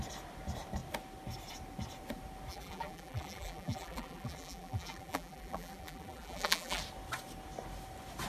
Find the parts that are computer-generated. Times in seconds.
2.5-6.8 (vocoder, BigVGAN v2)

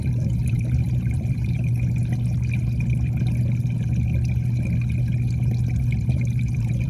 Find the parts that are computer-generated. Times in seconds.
0.0-1.7 (vocoder, BigVGAN v2); 5.8-6.9